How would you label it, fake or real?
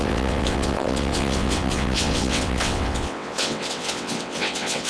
fake